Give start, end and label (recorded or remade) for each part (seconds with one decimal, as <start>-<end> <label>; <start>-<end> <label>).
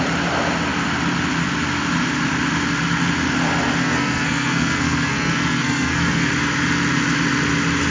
0.0-3.8 recorded; 3.8-6.3 remade; 6.3-7.9 recorded